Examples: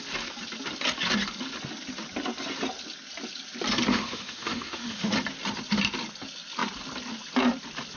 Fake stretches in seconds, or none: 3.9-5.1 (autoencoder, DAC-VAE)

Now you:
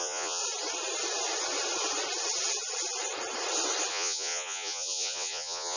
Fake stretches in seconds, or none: 0.0-0.4 (vocoder, Vocos); 3.9-5.8

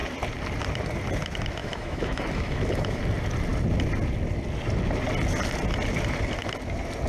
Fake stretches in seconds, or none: 1.6-3.0 (autoencoder, DAC-VAE)

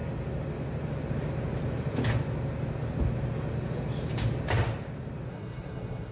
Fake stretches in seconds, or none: 5.3-6.1 (codec, SNAC)

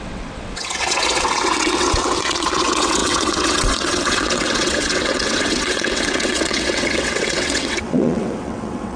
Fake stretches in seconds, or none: 0.0-9.0 (vocoder, WaveNeXt)

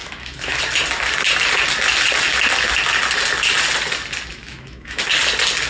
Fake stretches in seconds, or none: 0.0-0.6 (autoencoder, DAC-VAE); 4.3-5.0

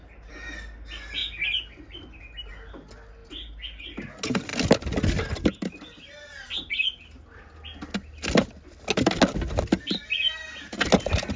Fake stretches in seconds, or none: none